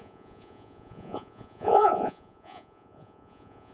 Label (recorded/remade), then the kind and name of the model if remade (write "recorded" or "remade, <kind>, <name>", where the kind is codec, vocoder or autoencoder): remade, vocoder, Vocos